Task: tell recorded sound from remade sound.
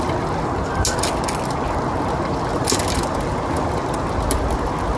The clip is recorded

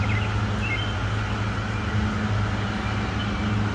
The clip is recorded